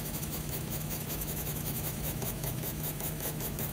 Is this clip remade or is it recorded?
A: remade